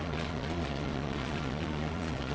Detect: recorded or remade remade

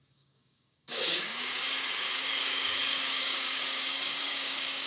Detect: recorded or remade remade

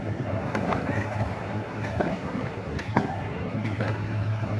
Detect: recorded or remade remade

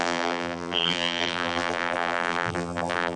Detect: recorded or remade remade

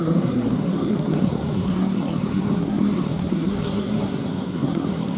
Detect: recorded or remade remade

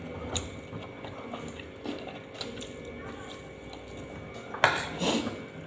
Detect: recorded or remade recorded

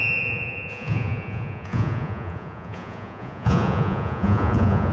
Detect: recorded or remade remade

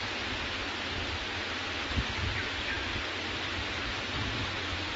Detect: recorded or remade recorded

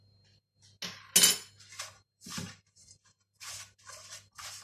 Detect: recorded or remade recorded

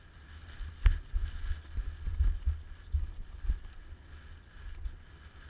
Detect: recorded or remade recorded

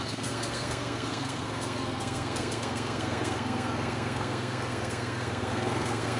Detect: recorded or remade remade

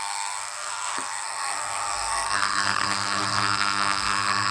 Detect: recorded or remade remade